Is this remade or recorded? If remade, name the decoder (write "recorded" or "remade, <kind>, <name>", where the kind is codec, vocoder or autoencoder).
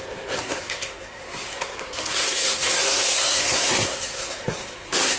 remade, codec, SNAC